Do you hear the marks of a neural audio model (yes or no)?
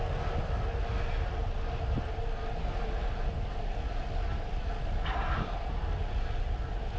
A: no